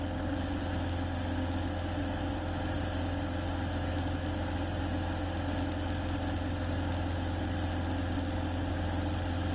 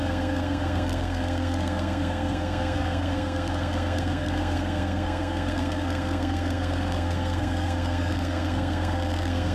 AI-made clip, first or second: second